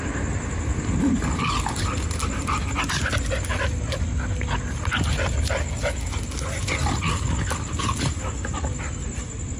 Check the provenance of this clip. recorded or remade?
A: recorded